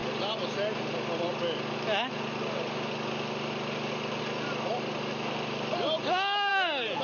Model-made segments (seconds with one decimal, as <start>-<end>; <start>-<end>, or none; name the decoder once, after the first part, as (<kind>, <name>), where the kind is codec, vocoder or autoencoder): none